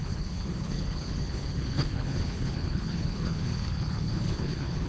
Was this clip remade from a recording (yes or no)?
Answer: yes